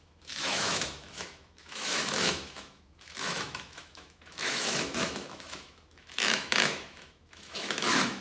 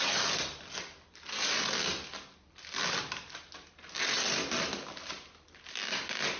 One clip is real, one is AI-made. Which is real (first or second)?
second